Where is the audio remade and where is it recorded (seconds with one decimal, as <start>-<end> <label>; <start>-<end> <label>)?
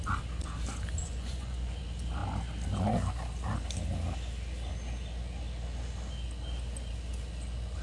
0.0-1.0 recorded; 1.0-1.8 remade; 1.8-7.8 recorded